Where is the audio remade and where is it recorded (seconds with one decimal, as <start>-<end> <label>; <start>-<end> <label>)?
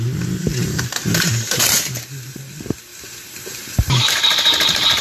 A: 0.0-0.5 recorded; 0.5-2.4 remade; 2.4-2.9 recorded; 2.9-5.0 remade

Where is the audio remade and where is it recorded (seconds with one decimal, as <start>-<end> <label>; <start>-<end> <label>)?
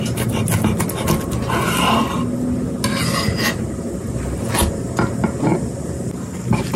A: 0.0-5.5 recorded; 5.5-6.2 remade; 6.2-6.8 recorded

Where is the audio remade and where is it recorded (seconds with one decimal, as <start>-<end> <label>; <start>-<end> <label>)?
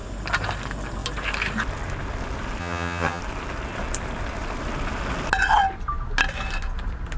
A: 0.0-2.6 recorded; 2.6-3.2 remade; 3.2-7.2 recorded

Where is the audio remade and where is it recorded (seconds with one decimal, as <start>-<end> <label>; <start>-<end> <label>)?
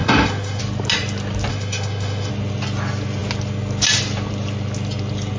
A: 0.0-0.6 remade; 0.6-1.5 recorded; 1.5-2.3 remade; 2.3-5.4 recorded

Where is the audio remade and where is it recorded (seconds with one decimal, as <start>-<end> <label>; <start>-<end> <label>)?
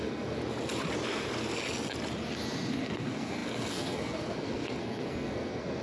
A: 0.0-0.4 remade; 0.4-2.8 recorded; 2.8-5.8 remade